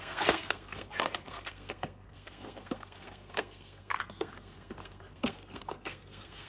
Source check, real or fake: fake